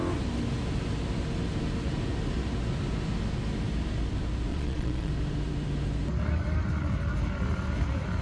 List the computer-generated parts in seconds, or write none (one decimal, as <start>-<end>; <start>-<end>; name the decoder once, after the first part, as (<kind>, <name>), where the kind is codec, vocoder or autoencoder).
4.5-5.1 (vocoder, Vocos)